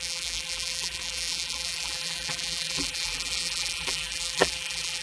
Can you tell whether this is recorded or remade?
remade